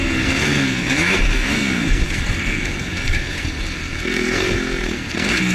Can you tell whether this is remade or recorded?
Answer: remade